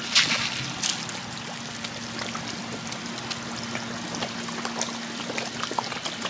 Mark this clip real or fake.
real